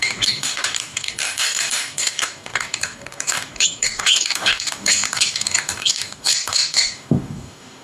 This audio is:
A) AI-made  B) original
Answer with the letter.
A